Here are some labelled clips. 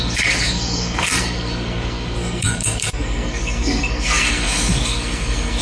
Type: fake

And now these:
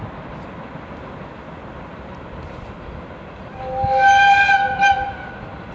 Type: real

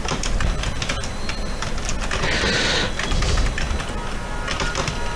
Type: real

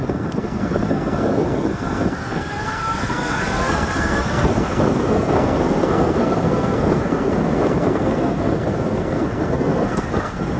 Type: fake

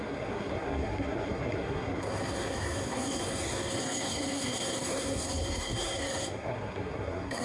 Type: fake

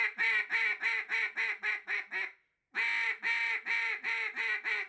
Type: real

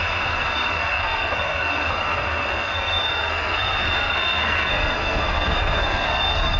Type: fake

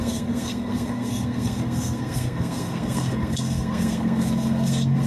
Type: fake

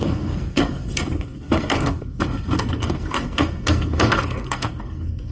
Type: fake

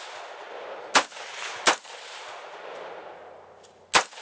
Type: real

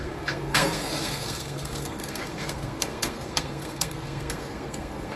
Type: fake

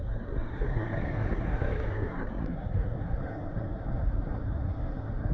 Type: fake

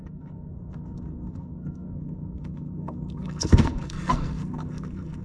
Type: fake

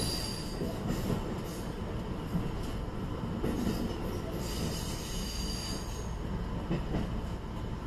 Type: real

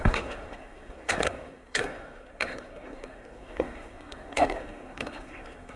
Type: fake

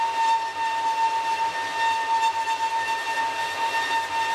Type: real